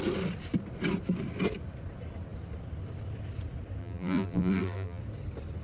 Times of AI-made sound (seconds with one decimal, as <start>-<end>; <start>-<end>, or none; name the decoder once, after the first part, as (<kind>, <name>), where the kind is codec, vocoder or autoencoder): 3.8-5.0 (vocoder, BigVGAN v2)